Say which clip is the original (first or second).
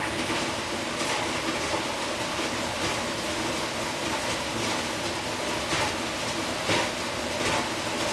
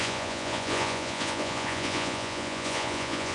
first